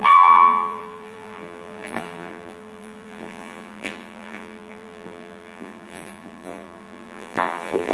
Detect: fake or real fake